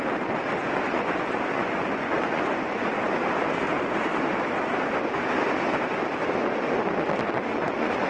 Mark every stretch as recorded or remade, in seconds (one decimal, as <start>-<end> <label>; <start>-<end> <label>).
0.0-0.6 recorded; 0.6-2.9 remade; 2.9-7.5 recorded; 7.5-8.1 remade